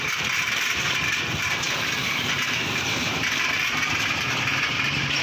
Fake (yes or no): yes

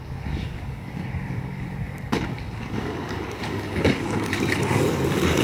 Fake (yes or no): yes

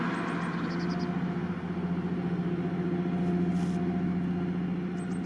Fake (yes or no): no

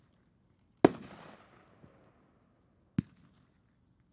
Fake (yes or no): no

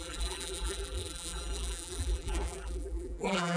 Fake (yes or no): yes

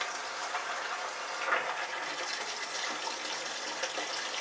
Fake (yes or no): no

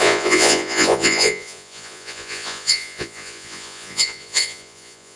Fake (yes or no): yes